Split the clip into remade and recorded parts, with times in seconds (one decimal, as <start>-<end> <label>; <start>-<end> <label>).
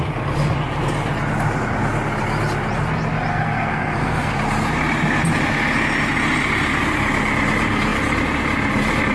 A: 0.0-3.3 recorded; 3.3-4.3 remade; 4.3-9.1 recorded